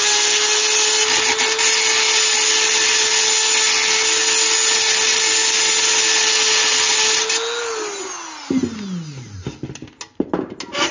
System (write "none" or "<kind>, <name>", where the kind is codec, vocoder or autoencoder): none